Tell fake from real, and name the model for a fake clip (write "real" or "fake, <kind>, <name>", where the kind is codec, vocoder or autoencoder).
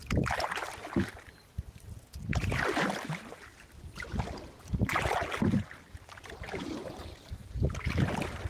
real